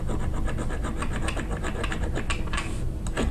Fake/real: real